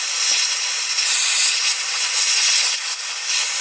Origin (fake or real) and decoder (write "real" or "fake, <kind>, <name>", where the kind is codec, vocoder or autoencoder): real